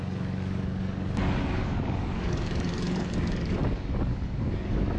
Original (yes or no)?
no